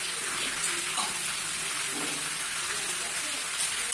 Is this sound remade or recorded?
recorded